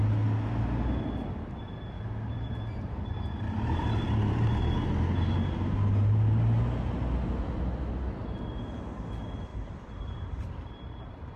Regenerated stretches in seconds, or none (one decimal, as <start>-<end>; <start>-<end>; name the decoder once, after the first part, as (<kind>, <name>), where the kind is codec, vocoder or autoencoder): 2.3-4.6 (vocoder, BigVGAN v2); 9.5-10.7